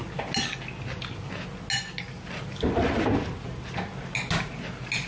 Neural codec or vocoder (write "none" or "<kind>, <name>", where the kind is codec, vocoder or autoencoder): none